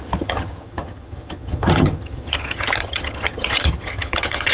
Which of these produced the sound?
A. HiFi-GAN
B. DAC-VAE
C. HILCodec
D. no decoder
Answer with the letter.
A